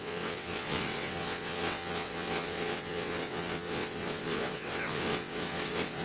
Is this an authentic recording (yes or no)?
no